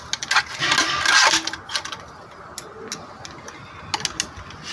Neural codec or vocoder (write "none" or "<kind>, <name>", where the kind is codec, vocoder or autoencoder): none